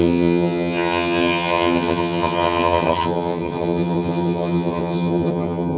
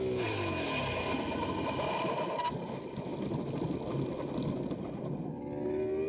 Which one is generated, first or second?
first